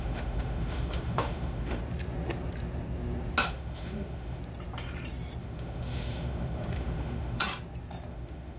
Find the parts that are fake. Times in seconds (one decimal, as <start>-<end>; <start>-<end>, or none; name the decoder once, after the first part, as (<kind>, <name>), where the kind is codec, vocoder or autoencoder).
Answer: 0.0-1.8 (autoencoder, DAC-VAE); 3.5-4.4; 5.4-7.4; 8.1-8.6